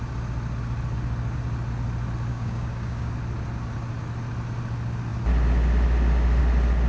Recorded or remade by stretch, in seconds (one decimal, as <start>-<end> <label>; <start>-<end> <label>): 0.0-2.3 recorded; 2.3-3.1 remade; 3.1-6.9 recorded